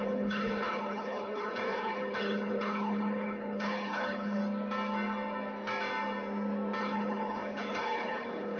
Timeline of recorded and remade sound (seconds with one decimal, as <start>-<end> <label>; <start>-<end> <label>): 0.0-4.4 remade; 4.4-6.8 recorded; 6.8-8.6 remade